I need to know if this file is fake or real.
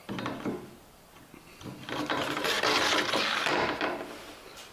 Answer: real